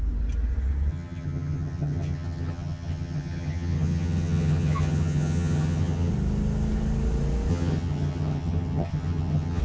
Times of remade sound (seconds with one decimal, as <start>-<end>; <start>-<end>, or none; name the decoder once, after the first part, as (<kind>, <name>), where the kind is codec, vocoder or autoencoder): 0.9-6.1 (vocoder, HiFi-GAN); 7.5-9.6